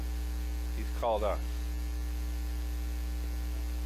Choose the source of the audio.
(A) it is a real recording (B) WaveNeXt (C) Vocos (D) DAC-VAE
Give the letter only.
A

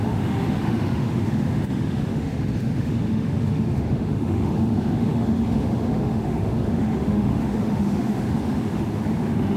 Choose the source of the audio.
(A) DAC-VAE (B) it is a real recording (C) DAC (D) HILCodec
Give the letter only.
A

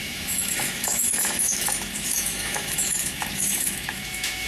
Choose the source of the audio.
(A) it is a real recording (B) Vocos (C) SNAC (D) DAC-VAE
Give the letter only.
D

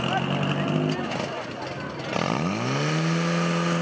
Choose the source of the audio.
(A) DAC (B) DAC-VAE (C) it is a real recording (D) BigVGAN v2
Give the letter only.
C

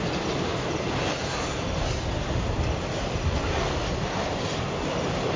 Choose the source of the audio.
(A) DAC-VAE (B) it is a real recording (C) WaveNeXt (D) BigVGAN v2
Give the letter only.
B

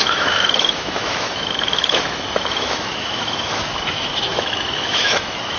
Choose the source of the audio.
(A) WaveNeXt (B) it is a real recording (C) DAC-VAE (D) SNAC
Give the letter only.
C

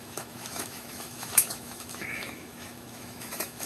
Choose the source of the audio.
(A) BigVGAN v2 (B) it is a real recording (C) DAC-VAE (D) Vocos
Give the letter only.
C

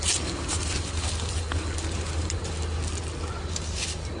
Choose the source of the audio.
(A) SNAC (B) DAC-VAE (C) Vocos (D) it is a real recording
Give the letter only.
D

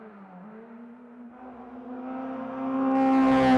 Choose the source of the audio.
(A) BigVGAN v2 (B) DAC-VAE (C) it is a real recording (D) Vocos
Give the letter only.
C